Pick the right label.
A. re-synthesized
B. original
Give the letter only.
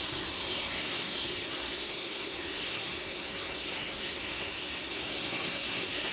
A